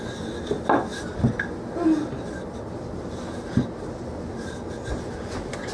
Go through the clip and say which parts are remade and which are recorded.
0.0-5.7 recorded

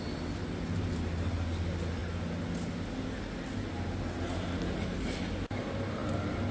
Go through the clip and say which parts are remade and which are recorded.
0.0-6.5 recorded

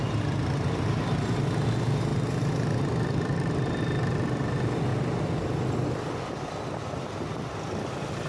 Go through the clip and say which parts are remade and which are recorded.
0.0-8.3 recorded

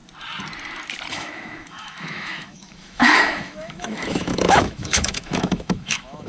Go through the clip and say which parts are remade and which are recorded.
0.0-1.1 recorded; 1.1-6.3 remade